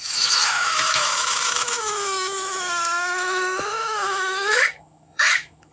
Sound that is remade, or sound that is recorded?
remade